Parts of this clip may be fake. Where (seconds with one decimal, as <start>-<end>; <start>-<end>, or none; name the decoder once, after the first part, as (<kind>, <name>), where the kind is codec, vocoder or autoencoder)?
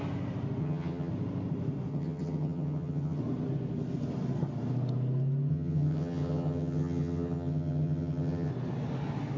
0.6-1.1 (vocoder, HiFi-GAN); 1.9-3.2; 5.5-8.5